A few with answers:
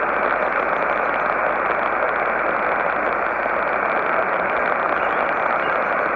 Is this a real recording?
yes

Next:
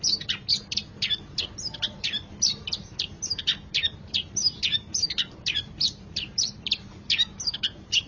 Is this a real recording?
no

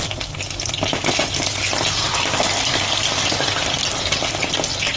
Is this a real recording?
yes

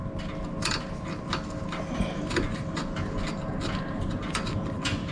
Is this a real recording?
yes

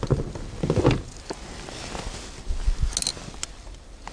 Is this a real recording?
yes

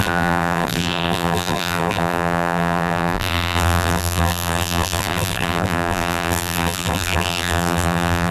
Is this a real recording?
no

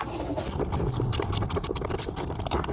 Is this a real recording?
no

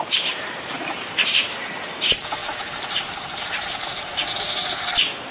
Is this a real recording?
no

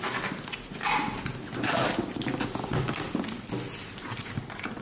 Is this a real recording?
yes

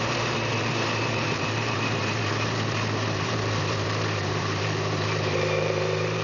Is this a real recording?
no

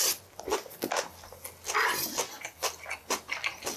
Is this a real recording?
yes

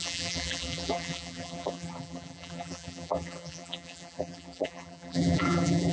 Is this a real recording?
no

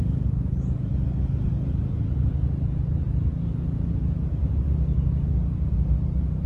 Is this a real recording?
yes